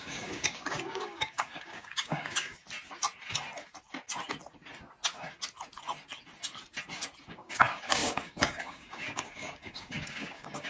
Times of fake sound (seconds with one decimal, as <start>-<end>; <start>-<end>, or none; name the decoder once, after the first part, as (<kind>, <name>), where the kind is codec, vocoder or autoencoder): 0.0-2.6 (codec, DAC); 7.3-10.7